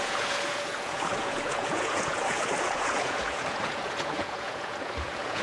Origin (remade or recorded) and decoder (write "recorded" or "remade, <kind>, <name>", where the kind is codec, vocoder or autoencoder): remade, vocoder, Vocos